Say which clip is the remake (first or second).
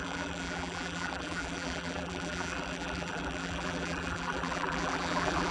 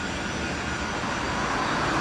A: first